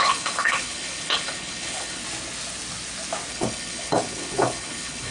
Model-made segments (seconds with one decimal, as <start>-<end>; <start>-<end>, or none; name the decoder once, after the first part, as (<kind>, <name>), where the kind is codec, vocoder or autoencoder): 0.0-2.0 (codec, HILCodec); 3.3-5.1